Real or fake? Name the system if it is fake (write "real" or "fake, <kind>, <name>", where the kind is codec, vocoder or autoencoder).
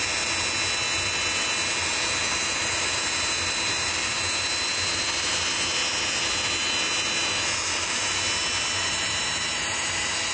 real